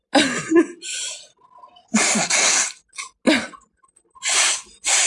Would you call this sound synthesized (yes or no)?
no